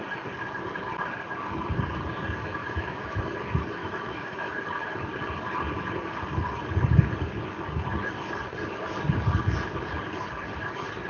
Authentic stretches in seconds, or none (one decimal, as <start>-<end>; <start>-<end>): 0.0-2.6; 3.2-3.8; 4.5-11.1